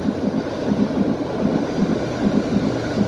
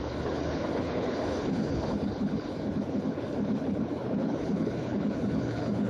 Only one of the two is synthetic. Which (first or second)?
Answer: second